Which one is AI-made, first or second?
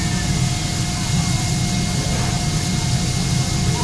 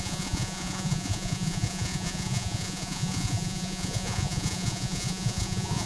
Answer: second